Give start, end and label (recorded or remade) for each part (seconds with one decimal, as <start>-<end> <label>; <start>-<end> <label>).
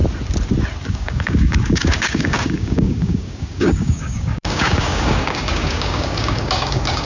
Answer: 0.0-0.9 recorded; 0.9-7.0 remade